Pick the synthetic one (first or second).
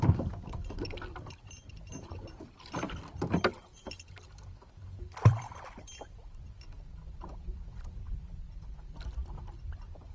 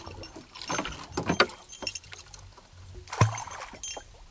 first